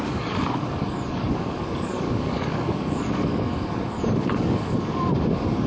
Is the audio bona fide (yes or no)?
no